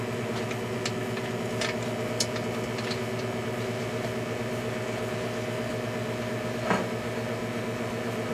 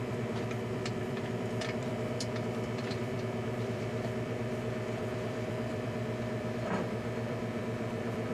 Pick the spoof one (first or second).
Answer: second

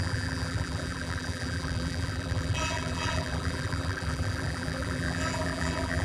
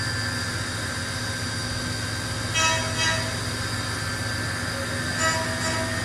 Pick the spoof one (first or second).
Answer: first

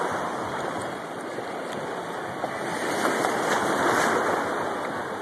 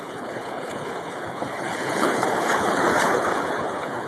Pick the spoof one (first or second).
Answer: second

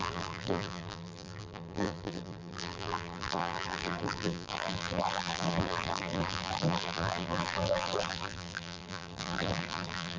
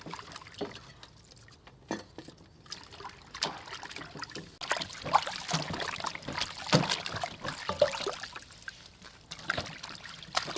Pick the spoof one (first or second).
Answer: first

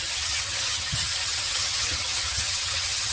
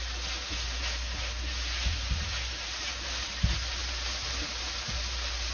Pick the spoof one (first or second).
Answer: first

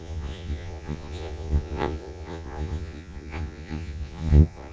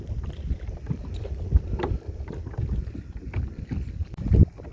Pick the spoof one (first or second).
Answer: first